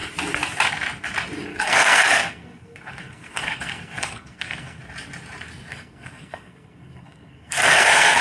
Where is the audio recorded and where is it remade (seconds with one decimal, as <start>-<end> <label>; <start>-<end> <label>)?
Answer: 0.0-1.5 recorded; 1.5-4.8 remade; 4.8-5.7 recorded; 5.7-8.2 remade